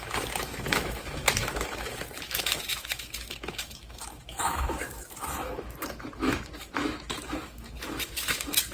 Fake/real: fake